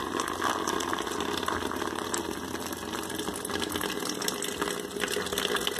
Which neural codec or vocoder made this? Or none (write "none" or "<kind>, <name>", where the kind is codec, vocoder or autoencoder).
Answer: none